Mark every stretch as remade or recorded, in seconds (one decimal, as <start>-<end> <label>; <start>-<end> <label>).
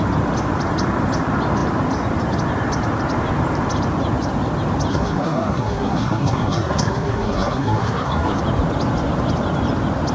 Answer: 0.0-4.9 recorded; 4.9-8.4 remade; 8.4-10.1 recorded